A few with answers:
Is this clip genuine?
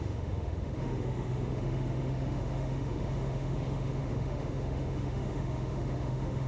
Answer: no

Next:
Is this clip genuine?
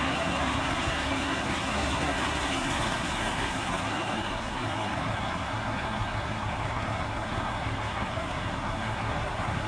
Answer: no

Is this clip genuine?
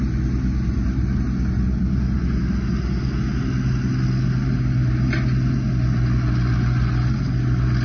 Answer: yes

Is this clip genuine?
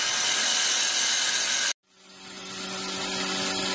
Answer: yes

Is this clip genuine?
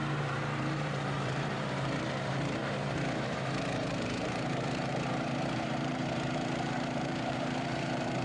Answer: no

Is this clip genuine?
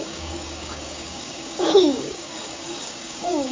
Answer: no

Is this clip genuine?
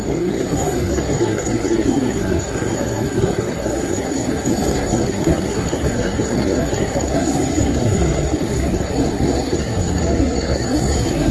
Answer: no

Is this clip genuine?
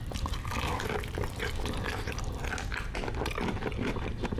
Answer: yes